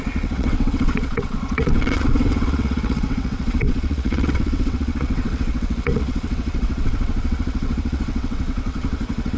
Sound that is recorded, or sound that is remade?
remade